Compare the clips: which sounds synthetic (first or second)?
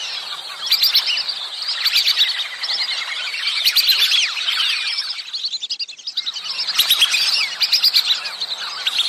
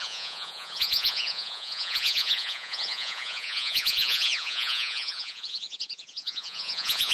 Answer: second